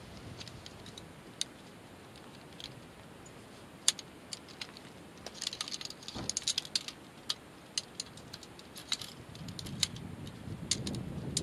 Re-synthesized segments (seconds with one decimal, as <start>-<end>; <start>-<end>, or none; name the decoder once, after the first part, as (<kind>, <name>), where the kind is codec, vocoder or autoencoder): 8.8-9.4 (vocoder, BigVGAN v2)